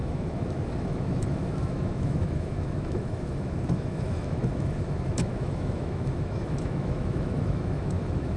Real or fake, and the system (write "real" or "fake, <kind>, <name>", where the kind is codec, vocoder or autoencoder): fake, autoencoder, DAC-VAE